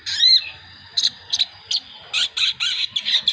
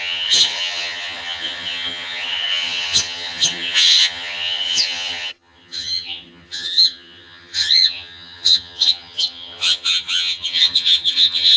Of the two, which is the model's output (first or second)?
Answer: second